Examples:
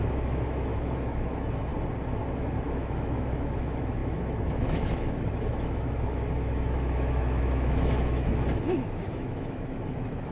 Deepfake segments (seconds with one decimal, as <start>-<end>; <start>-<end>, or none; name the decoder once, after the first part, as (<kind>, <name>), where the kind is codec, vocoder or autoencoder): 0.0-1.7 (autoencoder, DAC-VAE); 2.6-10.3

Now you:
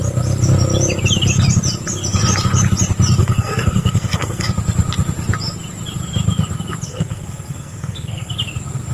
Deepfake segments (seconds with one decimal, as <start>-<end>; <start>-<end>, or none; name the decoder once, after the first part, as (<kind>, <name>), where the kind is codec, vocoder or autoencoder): 3.2-4.5 (codec, SNAC); 6.9-8.3

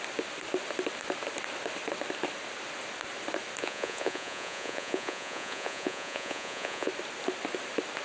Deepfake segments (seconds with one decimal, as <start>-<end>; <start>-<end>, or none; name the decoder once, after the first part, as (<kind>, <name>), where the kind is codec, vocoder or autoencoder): 3.6-6.9 (vocoder, Vocos)